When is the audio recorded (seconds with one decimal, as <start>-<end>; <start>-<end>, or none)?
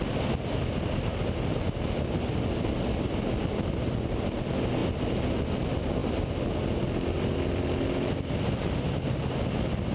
0.0-9.9